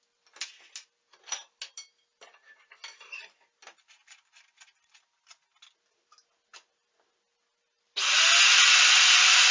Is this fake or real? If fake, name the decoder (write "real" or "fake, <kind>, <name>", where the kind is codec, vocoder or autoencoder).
real